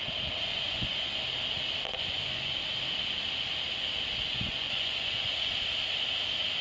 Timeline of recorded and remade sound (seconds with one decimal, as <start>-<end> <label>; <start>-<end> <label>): 0.0-0.5 recorded; 0.5-1.1 remade; 1.1-1.9 recorded; 1.9-2.6 remade; 2.6-4.3 recorded; 4.3-5.5 remade; 5.5-6.6 recorded